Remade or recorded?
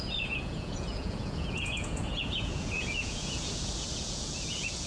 remade